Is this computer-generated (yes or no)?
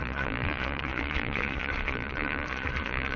yes